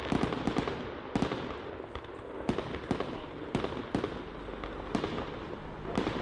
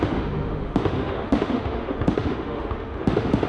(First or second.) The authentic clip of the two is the first